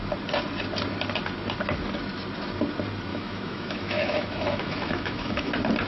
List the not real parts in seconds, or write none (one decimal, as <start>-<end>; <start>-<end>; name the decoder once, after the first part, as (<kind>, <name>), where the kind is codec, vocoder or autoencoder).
3.1-5.5 (autoencoder, DAC-VAE)